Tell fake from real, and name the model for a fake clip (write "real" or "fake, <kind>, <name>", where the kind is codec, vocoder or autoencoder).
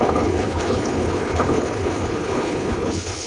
fake, codec, HILCodec